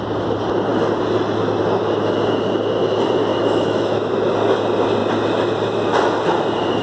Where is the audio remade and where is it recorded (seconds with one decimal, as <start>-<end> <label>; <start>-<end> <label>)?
0.0-3.3 recorded; 3.3-4.3 remade; 4.3-6.8 recorded